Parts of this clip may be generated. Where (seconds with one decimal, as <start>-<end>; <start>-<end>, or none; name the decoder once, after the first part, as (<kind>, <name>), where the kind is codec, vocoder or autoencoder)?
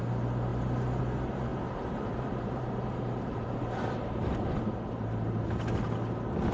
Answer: 1.5-5.4 (vocoder, BigVGAN v2)